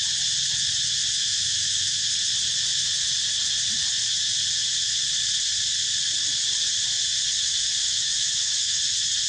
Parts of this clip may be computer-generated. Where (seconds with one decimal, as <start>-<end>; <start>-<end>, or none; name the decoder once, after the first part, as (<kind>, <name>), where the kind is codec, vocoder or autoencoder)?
1.2-2.0 (autoencoder, DAC-VAE); 7.8-8.8